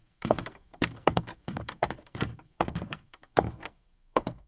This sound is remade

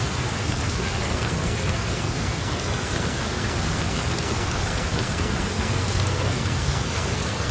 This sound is remade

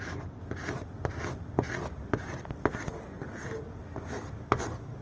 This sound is recorded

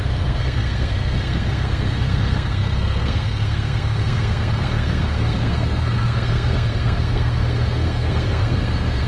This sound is remade